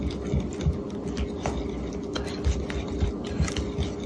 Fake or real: real